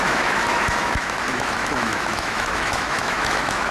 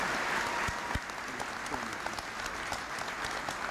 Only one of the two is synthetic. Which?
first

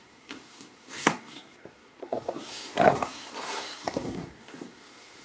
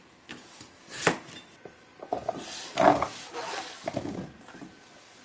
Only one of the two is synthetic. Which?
first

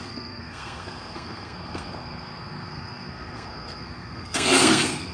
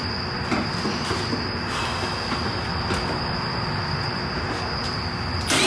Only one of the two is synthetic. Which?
first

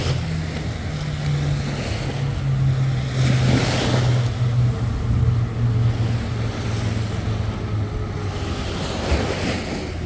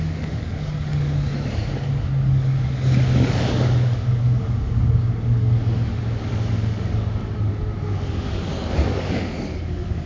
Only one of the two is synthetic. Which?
second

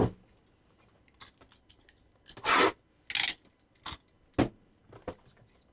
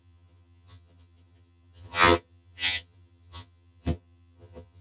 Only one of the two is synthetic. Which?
second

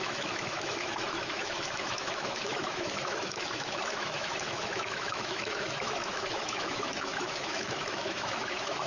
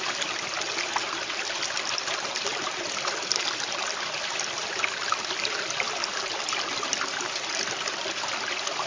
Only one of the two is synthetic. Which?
first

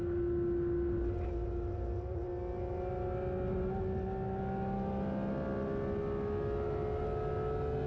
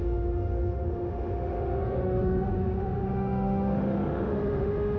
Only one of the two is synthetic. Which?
second